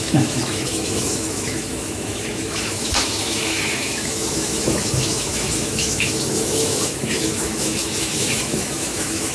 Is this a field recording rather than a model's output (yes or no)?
no